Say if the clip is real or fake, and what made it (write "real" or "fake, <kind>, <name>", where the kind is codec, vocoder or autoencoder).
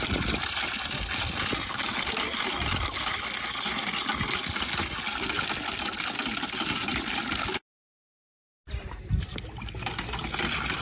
real